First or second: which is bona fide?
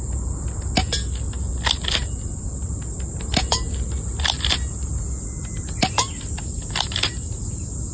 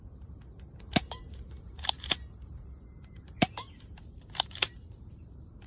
first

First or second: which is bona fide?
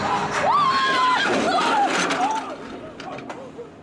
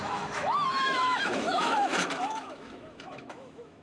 first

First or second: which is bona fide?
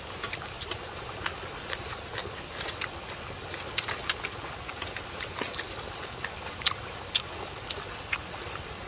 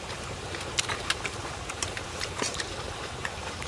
first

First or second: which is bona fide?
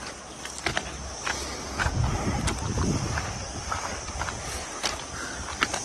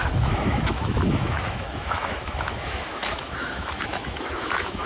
first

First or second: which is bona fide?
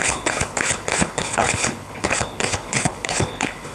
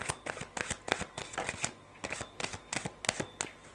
second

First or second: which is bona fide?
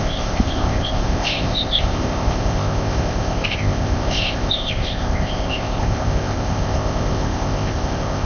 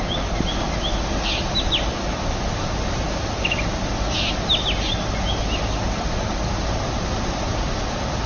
second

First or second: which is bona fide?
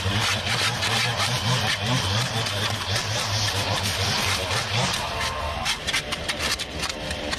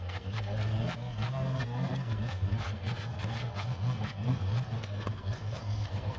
first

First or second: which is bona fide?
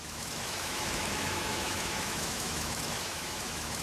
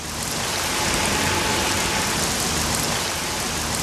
second